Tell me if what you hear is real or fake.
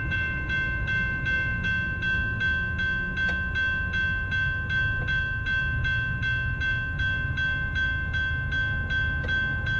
real